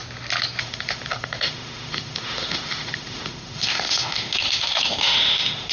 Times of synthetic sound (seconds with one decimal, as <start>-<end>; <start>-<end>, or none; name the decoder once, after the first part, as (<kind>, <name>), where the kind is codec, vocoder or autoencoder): 0.6-5.7 (autoencoder, DAC-VAE)